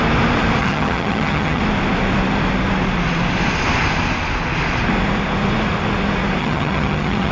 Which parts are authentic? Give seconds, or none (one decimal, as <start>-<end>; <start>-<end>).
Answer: 0.0-0.6; 1.6-6.4